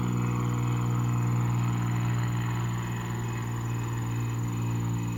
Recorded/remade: recorded